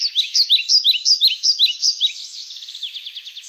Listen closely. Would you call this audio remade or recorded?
remade